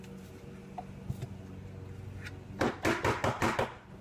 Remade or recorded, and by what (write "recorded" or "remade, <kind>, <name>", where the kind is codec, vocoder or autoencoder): recorded